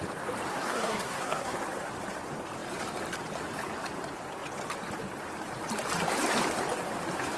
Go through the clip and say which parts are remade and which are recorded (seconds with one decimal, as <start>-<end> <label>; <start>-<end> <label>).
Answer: 0.0-0.5 recorded; 0.5-1.6 remade; 1.6-7.4 recorded